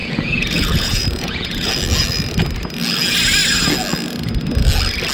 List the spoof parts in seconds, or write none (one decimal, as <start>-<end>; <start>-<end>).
0.0-1.7